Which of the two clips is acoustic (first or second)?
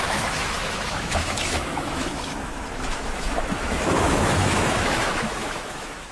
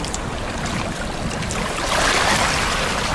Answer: second